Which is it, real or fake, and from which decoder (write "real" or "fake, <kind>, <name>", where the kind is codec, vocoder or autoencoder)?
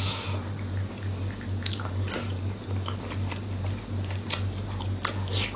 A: real